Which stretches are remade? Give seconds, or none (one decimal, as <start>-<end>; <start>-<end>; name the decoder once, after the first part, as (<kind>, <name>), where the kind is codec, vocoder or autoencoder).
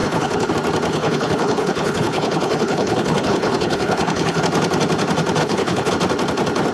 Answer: 0.0-0.5 (codec, HILCodec); 0.9-4.4; 5.4-5.9